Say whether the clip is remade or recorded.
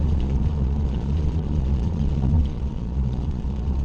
remade